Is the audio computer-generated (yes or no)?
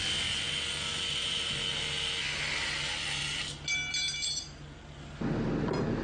no